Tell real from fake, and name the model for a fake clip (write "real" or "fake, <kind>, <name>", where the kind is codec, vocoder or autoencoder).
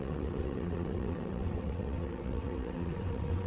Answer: fake, vocoder, WaveNeXt